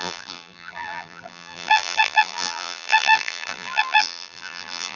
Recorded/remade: remade